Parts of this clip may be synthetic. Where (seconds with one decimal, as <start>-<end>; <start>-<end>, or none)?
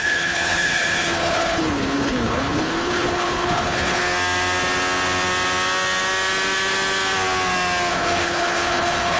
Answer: 0.0-4.0; 7.9-9.2